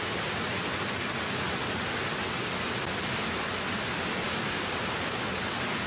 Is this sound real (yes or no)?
yes